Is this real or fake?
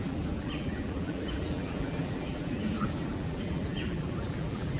fake